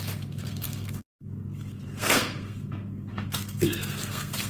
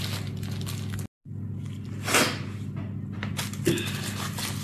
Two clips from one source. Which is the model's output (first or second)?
first